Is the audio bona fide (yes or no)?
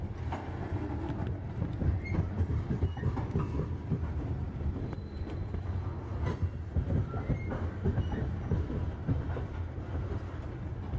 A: yes